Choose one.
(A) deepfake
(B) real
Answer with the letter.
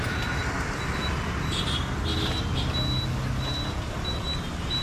B